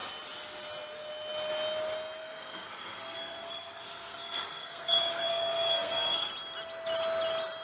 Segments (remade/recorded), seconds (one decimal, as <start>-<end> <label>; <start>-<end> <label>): 0.0-2.2 recorded; 2.2-6.3 remade; 6.3-7.6 recorded